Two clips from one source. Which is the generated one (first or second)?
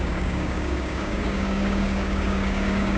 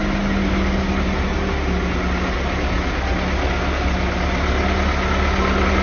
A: first